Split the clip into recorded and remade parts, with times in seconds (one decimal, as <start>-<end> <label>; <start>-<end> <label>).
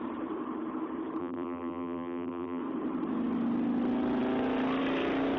0.0-1.2 recorded; 1.2-2.6 remade; 2.6-5.4 recorded